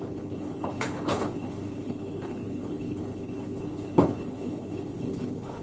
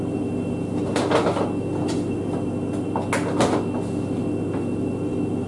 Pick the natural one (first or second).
second